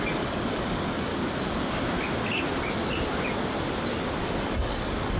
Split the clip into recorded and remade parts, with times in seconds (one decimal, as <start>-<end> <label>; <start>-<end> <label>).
0.0-1.1 remade; 1.1-4.2 recorded; 4.2-5.2 remade